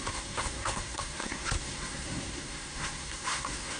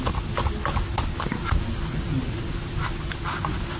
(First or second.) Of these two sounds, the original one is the second